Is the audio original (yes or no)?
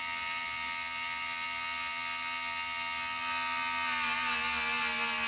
yes